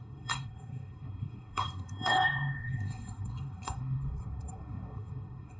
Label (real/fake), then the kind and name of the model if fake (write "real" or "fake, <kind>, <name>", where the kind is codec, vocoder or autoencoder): fake, codec, SNAC